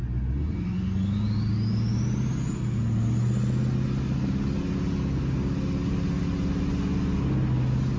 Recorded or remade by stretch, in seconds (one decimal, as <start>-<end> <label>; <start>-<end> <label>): 0.0-8.0 recorded